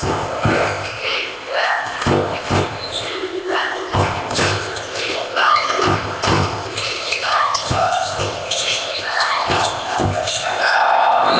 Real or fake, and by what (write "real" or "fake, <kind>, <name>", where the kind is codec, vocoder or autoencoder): fake, codec, ZipCodec